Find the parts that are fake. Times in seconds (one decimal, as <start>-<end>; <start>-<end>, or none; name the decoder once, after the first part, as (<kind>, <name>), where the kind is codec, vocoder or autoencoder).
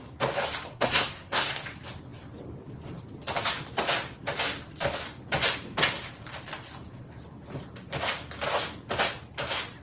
0.7-1.6 (codec, SNAC)